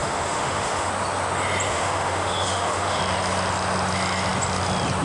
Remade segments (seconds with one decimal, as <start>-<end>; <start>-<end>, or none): 0.0-0.9; 1.7-3.0